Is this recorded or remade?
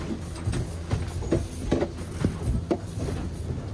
recorded